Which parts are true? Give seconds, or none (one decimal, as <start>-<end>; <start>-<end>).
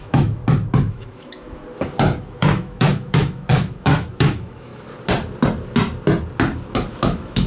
0.4-0.9; 1.6-2.2; 4.7-6.9